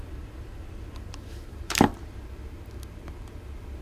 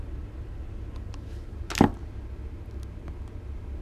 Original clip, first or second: second